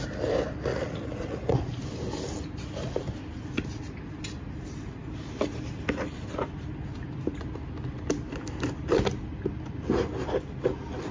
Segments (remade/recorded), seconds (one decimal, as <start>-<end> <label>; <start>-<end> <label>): 0.0-0.7 recorded; 0.7-1.8 remade; 1.8-11.1 recorded